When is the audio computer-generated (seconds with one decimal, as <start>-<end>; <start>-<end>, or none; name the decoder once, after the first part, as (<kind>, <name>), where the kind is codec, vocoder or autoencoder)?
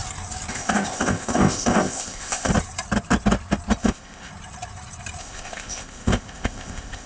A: 0.5-2.5 (codec, ZipCodec); 3.8-4.3; 5.2-7.1